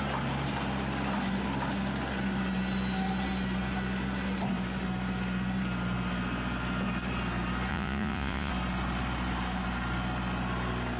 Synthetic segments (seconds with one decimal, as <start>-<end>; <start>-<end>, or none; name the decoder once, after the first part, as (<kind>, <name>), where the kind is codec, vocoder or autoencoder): 7.7-8.5 (vocoder, Vocos)